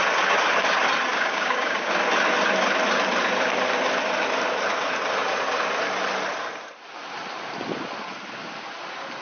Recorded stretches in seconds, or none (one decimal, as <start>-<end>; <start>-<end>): 0.0-1.1; 1.9-9.2